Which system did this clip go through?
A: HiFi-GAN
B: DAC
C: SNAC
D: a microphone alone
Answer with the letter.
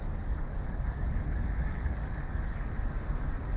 B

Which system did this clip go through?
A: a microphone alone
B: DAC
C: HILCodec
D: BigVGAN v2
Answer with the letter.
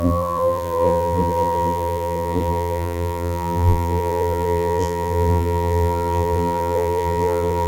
D